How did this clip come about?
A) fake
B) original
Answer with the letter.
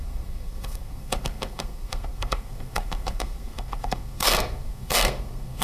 A